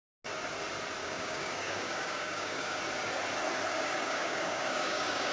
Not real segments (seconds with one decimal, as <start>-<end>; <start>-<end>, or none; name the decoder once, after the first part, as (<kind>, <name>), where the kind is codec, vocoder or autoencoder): 1.0-2.8 (codec, DAC); 3.7-5.3